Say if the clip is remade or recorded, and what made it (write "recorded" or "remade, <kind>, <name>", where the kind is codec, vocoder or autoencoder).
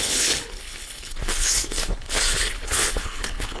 remade, codec, HILCodec